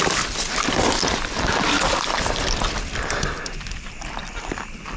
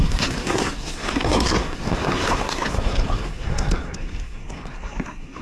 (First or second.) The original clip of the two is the first